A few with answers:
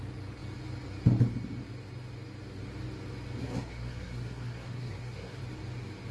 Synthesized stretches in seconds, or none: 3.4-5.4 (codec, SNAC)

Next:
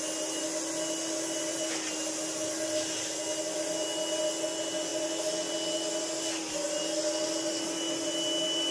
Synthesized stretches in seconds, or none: none

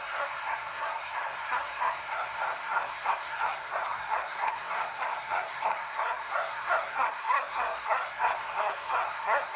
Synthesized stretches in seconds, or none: 0.0-9.6 (codec, SNAC)

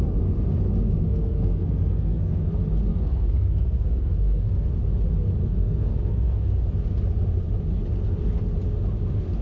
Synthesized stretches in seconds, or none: 0.8-2.5 (codec, SNAC); 2.9-4.5; 5.6-6.5

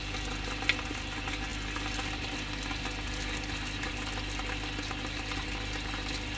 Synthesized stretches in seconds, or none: none

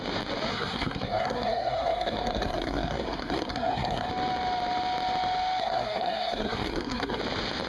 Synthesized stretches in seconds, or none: 0.5-4.1 (codec, SNAC); 5.6-7.2

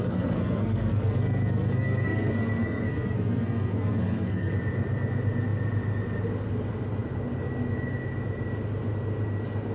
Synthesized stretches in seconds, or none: 0.0-4.5 (codec, SNAC)

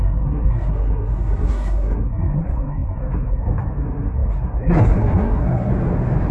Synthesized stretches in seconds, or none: 0.0-5.7 (codec, SNAC)